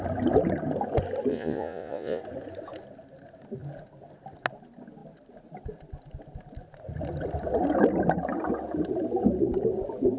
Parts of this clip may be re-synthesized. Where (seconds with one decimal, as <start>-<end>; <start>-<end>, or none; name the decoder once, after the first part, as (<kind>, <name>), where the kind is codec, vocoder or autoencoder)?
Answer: 1.3-2.2 (vocoder, Vocos)